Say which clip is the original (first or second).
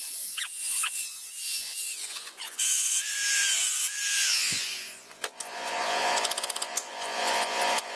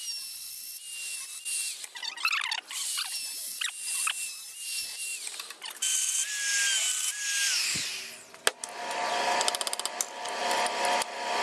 second